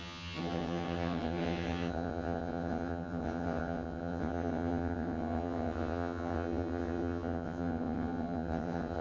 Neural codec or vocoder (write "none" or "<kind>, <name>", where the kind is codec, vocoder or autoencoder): vocoder, HiFi-GAN